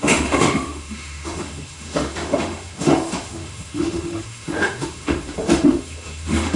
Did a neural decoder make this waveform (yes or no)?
yes